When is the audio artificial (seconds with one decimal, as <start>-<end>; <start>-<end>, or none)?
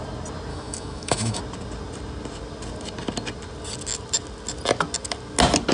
0.5-1.4